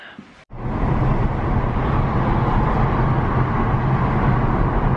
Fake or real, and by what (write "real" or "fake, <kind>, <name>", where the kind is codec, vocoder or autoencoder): real